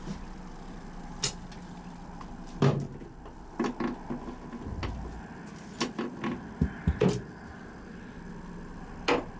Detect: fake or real real